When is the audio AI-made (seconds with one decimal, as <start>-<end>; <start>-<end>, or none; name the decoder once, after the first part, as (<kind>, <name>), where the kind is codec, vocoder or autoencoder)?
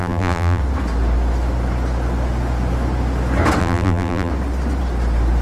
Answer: 0.0-0.6 (vocoder, BigVGAN v2); 3.6-4.3